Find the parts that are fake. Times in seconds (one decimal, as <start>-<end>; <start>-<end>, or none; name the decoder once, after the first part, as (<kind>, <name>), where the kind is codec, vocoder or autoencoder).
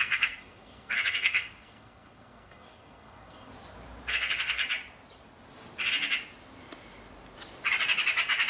0.0-3.5 (codec, SNAC); 4.1-4.6